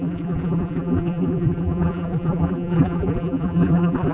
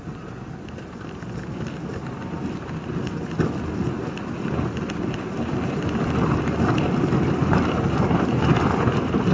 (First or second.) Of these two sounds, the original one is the second